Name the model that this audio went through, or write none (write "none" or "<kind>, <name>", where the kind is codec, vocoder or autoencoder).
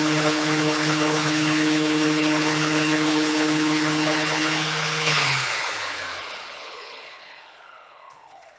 codec, HILCodec